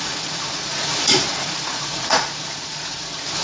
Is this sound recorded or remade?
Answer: remade